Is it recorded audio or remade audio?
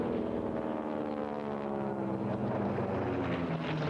recorded